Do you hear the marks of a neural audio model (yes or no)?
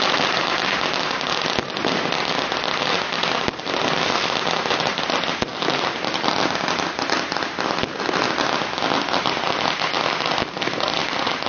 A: no